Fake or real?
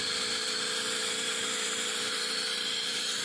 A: fake